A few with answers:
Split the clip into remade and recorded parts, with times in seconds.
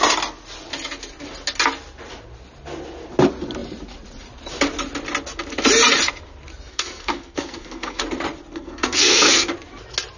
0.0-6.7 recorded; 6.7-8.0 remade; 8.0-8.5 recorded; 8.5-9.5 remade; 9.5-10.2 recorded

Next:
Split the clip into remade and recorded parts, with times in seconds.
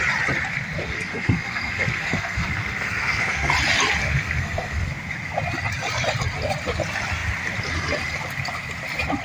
0.0-0.8 recorded; 0.8-3.5 remade; 3.5-4.0 recorded; 4.0-4.9 remade; 4.9-9.2 recorded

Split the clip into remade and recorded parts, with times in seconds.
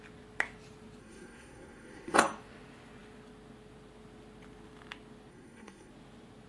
0.0-1.0 recorded; 1.0-2.2 remade; 2.2-5.3 recorded; 5.3-5.9 remade; 5.9-6.5 recorded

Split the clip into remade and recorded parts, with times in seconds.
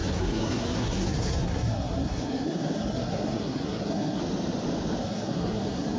0.0-4.2 remade; 4.2-5.0 recorded; 5.0-6.0 remade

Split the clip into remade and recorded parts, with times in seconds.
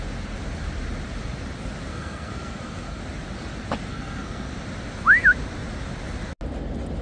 0.0-1.9 recorded; 1.9-3.0 remade; 3.0-3.9 recorded; 3.9-4.5 remade; 4.5-7.0 recorded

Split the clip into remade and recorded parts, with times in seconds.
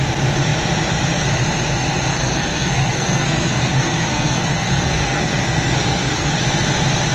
0.0-2.1 recorded; 2.1-6.4 remade; 6.4-7.1 recorded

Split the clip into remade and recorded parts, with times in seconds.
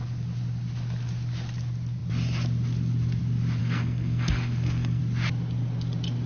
0.0-3.6 recorded; 3.6-5.0 remade; 5.0-6.3 recorded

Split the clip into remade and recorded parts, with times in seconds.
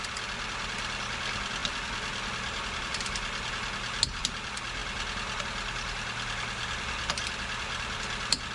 0.0-8.5 recorded